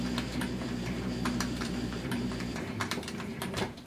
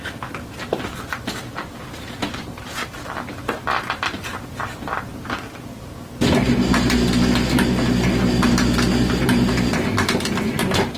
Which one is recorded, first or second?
second